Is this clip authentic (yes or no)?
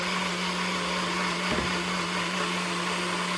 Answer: yes